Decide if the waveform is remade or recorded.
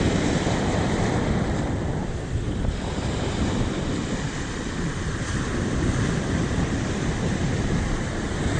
remade